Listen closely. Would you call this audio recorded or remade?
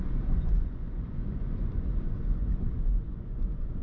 remade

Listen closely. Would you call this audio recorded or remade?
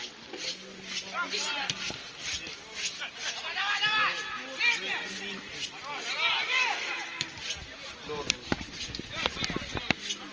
recorded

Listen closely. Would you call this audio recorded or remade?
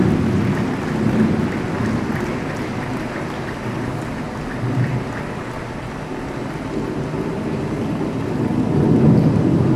recorded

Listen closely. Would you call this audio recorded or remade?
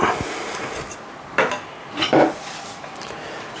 recorded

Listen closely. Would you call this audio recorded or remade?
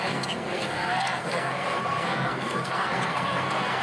remade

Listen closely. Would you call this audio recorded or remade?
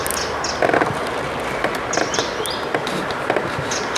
recorded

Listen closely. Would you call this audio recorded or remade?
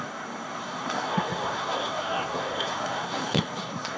remade